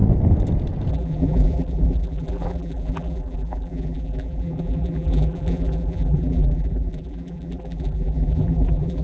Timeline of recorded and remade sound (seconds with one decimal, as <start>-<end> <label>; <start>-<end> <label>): 0.0-0.9 recorded; 0.9-9.0 remade